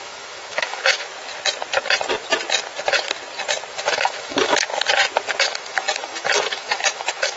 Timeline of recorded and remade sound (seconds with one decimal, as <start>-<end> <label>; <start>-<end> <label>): 0.0-1.1 remade; 1.1-3.7 recorded; 3.7-4.7 remade; 4.7-5.4 recorded; 5.4-7.4 remade